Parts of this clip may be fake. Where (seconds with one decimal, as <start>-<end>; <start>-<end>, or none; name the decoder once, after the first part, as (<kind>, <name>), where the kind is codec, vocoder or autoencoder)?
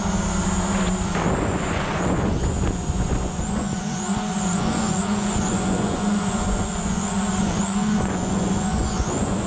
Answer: 1.4-9.5 (vocoder, Vocos)